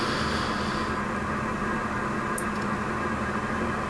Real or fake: real